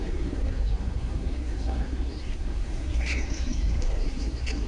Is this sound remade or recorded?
remade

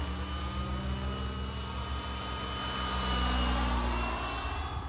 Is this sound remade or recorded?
recorded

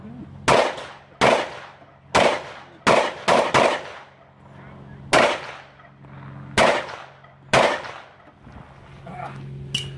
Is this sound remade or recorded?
recorded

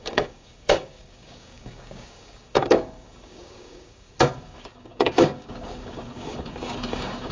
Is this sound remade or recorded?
remade